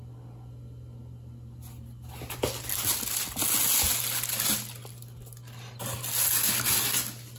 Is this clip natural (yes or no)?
yes